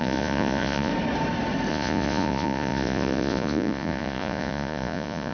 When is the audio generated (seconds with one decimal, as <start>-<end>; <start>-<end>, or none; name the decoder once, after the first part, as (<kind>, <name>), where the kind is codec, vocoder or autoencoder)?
0.0-0.9 (vocoder, Vocos); 1.7-5.3